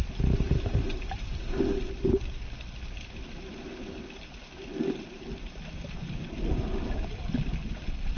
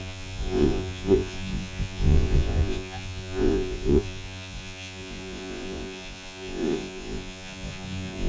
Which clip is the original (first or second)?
first